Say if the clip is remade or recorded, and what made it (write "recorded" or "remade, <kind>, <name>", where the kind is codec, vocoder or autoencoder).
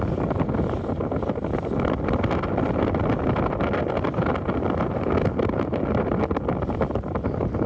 recorded